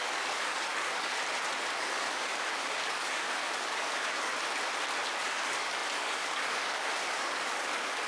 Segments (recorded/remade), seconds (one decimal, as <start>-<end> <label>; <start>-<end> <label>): 0.0-1.2 remade; 1.2-1.8 recorded; 1.8-4.3 remade; 4.3-5.2 recorded; 5.2-8.1 remade